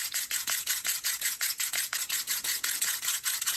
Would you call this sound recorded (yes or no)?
no